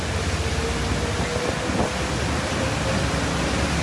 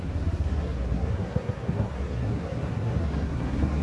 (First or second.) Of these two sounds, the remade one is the second